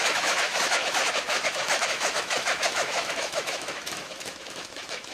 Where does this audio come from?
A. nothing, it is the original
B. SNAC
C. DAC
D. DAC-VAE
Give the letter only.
D